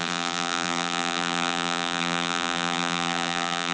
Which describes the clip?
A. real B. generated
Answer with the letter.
B